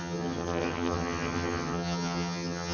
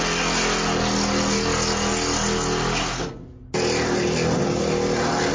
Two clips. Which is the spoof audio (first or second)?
first